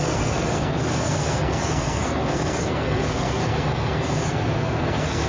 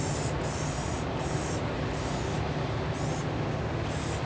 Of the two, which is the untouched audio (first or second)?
second